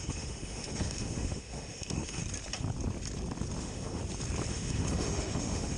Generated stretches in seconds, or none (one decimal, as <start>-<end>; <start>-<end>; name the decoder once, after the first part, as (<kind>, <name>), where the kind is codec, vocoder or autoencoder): 0.0-2.2 (autoencoder, DAC-VAE); 3.6-4.0; 4.5-5.8